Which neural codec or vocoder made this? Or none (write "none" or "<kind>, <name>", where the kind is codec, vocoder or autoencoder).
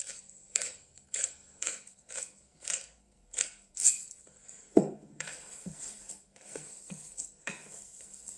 codec, SNAC